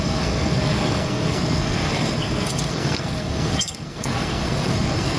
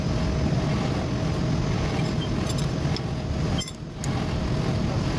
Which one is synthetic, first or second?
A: first